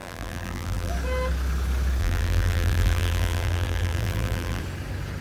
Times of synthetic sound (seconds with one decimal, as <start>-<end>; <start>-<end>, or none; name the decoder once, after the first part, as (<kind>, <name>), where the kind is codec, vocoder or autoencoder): 0.0-0.9 (vocoder, BigVGAN v2); 2.0-4.6